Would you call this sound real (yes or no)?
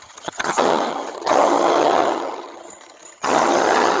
no